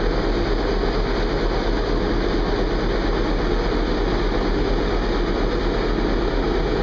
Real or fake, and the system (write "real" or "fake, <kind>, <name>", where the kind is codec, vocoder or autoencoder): real